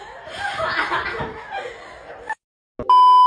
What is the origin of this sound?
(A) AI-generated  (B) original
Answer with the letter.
B